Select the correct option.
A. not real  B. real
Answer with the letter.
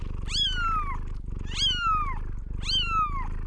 B